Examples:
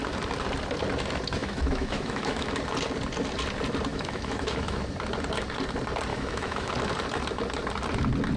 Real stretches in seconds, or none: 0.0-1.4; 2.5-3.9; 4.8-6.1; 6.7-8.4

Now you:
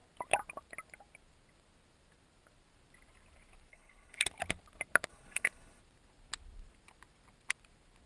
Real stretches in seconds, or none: 0.0-3.7; 4.3-5.1; 5.8-8.1

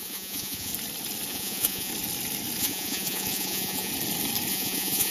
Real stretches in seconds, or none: 0.7-1.3; 1.9-2.6; 3.9-4.5